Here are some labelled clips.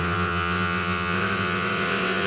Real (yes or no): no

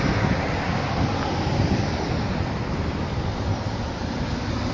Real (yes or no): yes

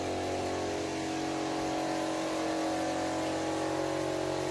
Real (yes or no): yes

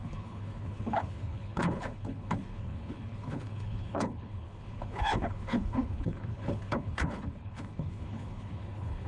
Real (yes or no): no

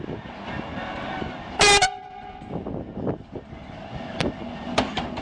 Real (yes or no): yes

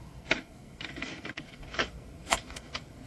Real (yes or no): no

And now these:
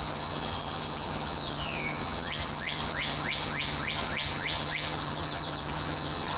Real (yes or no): no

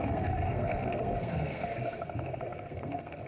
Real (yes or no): no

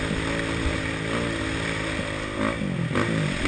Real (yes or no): yes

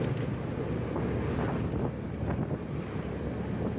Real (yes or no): yes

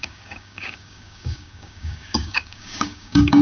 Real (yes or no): no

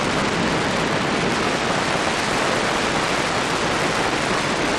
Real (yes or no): yes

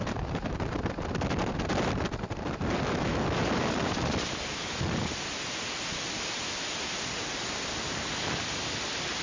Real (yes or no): no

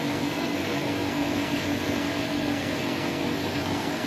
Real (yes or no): no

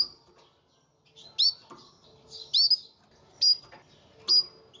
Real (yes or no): yes